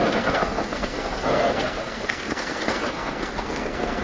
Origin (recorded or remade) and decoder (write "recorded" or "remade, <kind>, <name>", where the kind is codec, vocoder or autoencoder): remade, codec, SNAC